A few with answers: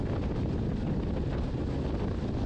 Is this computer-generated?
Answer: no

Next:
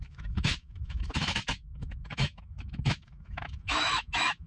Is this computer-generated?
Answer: yes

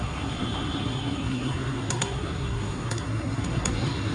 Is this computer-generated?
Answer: yes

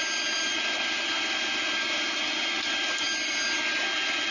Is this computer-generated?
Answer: no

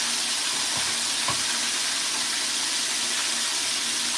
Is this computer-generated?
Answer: no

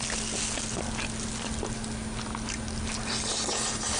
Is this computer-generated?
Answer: no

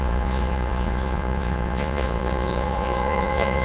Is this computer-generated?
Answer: yes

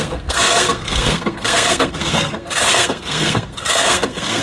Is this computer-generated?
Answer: yes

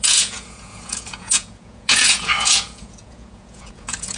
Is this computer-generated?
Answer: yes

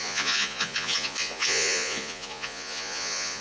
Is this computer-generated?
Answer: yes